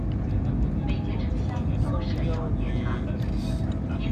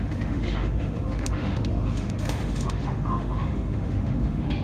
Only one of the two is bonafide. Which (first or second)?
first